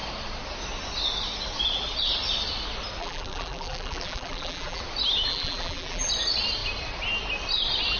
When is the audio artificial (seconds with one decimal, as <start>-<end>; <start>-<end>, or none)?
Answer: 3.0-4.8; 5.3-6.1

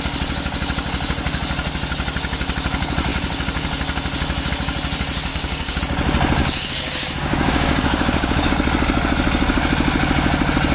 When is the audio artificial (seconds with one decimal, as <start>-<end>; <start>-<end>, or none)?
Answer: 5.3-5.8; 6.4-8.5

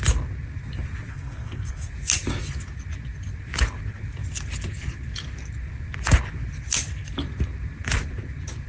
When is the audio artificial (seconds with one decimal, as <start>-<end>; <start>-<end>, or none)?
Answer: 1.1-1.9

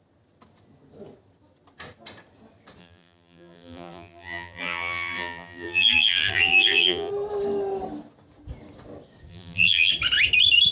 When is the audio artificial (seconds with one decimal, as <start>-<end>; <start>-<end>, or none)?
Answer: 2.8-7.1; 9.3-9.9

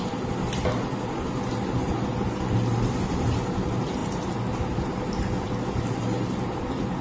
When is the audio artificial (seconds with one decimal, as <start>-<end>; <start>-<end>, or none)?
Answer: none

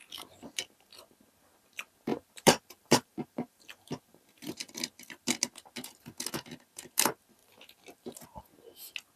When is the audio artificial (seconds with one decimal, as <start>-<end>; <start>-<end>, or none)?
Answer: 0.0-0.8; 2.1-4.7; 7.4-8.4